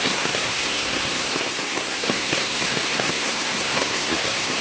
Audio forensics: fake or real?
fake